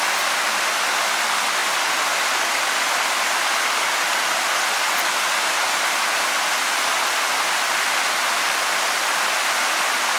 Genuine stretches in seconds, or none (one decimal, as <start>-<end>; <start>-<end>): 0.0-10.2